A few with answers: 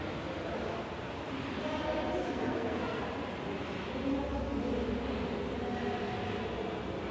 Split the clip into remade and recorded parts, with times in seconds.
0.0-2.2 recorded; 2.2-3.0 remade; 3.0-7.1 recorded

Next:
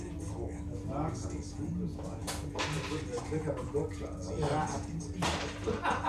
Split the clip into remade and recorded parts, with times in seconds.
0.0-6.1 recorded

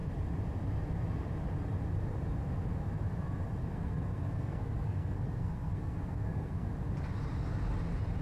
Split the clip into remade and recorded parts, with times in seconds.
0.0-3.6 recorded; 3.6-6.7 remade; 6.7-8.2 recorded

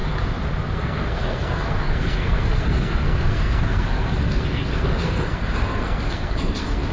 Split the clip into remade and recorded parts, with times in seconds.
0.0-0.7 recorded; 0.7-6.9 remade

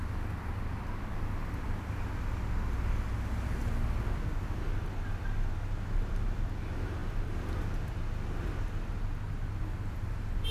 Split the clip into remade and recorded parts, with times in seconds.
0.0-10.5 recorded

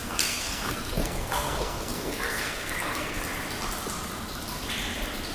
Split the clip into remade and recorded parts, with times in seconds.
0.0-3.2 remade; 3.2-5.3 recorded

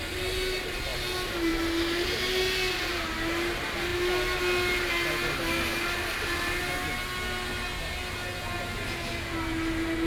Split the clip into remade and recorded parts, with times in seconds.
0.0-10.1 recorded

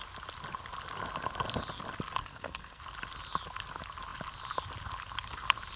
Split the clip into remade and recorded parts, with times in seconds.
0.0-2.2 recorded; 2.2-2.8 remade; 2.8-5.8 recorded